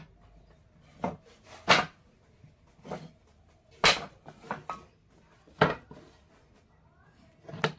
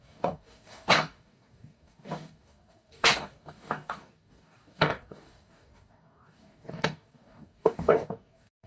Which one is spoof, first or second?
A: second